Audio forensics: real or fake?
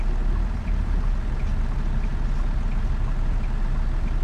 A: real